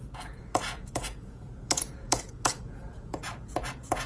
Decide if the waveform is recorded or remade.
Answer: remade